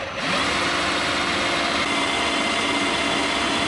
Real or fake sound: real